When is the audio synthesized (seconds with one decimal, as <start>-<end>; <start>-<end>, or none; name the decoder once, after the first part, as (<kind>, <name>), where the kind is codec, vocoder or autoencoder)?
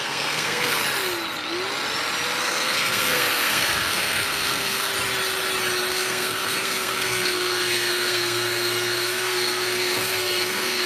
0.0-0.8 (codec, SNAC); 2.4-4.9; 5.9-10.9